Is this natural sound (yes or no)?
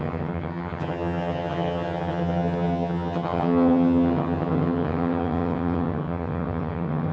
no